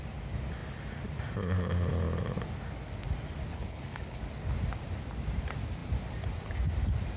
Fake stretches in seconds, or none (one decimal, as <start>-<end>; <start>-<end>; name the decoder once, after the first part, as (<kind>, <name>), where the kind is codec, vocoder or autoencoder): 3.5-4.2 (codec, HILCodec)